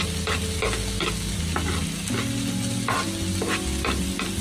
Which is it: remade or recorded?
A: recorded